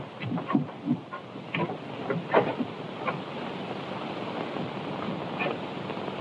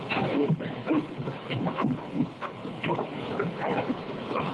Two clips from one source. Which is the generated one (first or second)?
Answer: second